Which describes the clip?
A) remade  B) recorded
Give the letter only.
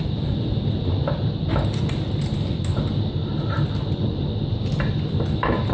B